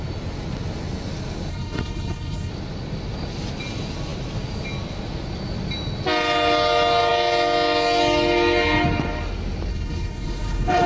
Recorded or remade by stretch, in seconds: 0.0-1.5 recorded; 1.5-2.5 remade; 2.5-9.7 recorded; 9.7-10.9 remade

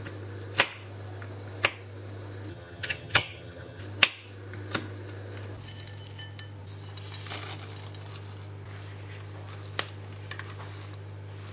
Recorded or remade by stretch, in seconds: 0.0-2.5 recorded; 2.5-3.8 remade; 3.8-11.5 recorded

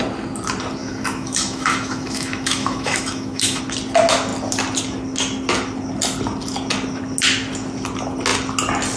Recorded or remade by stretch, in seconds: 0.0-0.8 recorded; 0.8-3.6 remade; 3.6-9.0 recorded

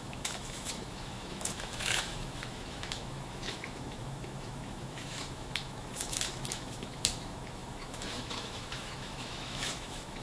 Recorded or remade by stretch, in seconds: 0.0-10.2 remade